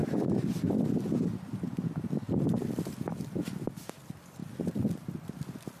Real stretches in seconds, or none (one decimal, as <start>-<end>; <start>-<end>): 3.5-4.4